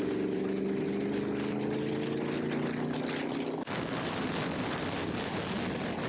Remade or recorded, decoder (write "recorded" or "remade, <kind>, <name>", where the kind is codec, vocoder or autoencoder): recorded